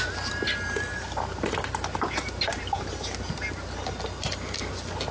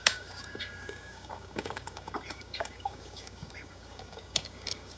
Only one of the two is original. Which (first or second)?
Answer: first